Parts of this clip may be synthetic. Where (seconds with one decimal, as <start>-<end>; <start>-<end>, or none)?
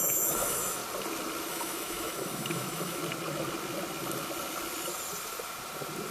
0.0-0.8; 1.5-3.0